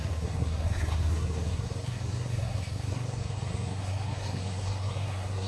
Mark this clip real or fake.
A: fake